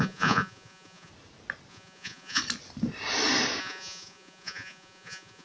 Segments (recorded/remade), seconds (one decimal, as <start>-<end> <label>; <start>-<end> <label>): 0.0-1.1 remade; 1.1-1.7 recorded; 1.7-2.4 remade; 2.4-3.6 recorded; 3.6-5.4 remade